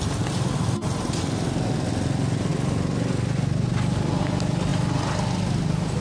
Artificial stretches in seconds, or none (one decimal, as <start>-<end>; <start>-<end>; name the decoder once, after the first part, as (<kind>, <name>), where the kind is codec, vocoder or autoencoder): none